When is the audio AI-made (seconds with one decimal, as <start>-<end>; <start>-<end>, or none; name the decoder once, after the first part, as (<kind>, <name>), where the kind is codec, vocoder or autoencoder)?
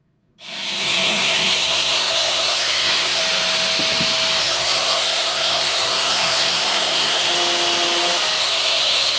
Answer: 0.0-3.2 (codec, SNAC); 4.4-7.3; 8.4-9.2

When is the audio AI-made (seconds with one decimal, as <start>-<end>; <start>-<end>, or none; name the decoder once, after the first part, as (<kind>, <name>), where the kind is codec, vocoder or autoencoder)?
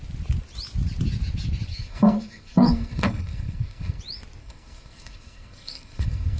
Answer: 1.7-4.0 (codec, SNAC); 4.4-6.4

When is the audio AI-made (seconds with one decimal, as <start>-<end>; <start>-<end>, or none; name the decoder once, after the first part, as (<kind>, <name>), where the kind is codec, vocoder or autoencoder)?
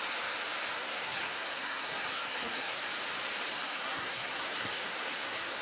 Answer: 0.8-2.8 (codec, SNAC); 3.5-5.6